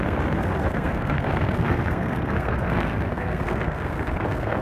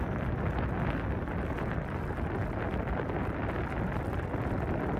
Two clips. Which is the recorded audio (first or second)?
second